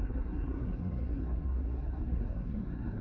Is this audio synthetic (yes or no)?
yes